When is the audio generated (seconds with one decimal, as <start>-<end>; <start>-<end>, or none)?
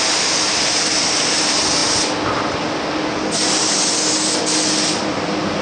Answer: none